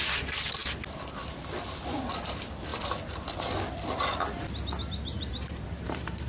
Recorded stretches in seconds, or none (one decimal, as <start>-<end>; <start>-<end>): 0.0-5.1